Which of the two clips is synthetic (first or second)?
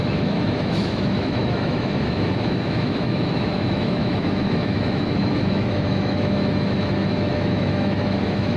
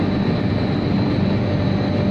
first